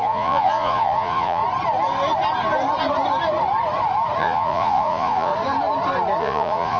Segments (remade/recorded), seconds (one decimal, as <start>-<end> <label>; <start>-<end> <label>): 0.0-1.4 remade; 1.4-4.2 recorded; 4.2-5.3 remade; 5.3-6.2 recorded; 6.2-6.8 remade